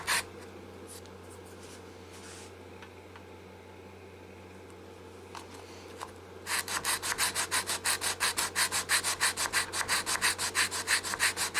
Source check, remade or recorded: recorded